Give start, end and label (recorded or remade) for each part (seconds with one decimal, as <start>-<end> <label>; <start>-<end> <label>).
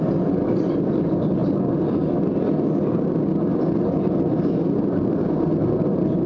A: 0.0-6.3 recorded